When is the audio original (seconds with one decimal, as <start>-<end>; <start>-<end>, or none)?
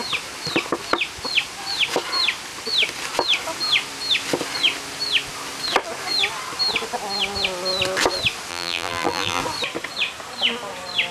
0.0-8.5; 9.4-11.1